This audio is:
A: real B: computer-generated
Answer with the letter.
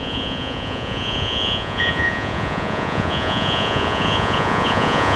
B